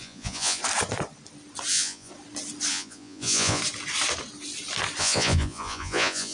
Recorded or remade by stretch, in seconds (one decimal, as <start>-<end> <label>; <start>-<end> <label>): 0.0-0.6 remade; 0.6-1.7 recorded; 1.7-2.1 remade; 2.1-2.7 recorded; 2.7-3.6 remade; 3.6-5.0 recorded; 5.0-6.3 remade